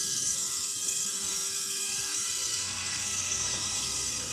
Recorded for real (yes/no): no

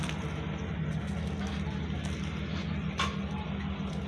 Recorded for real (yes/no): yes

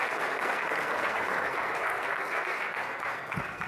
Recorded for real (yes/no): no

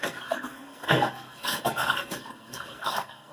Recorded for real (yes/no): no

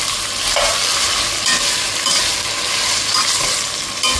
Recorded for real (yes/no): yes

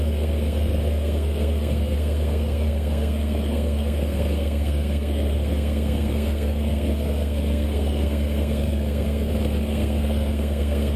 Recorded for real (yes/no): no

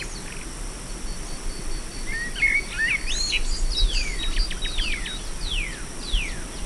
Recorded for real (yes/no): yes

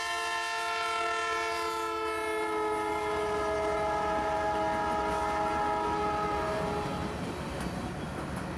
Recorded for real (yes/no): yes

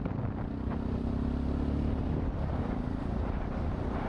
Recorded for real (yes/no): yes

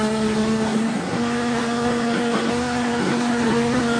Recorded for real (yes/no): no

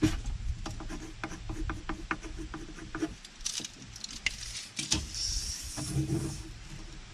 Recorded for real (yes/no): yes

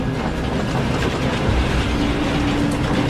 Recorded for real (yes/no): yes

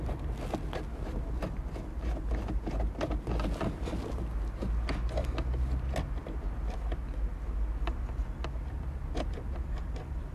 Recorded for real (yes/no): yes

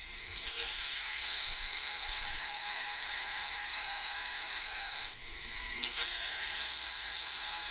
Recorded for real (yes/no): no